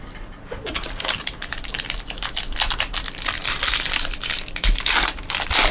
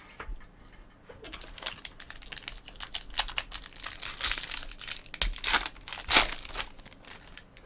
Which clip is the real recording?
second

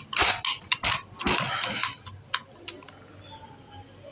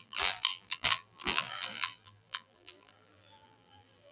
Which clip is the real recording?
first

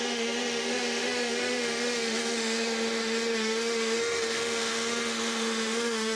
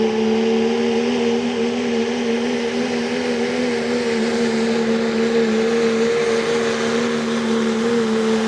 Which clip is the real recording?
second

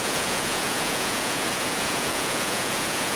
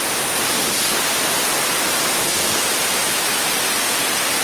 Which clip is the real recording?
second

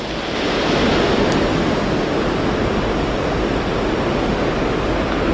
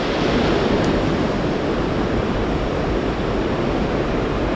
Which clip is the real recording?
first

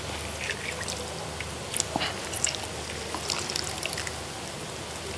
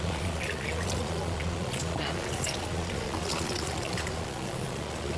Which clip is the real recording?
first